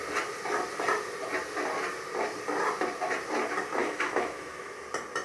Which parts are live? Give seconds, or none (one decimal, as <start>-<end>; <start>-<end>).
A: 0.0-3.8; 4.8-5.2